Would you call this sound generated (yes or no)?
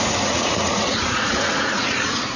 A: yes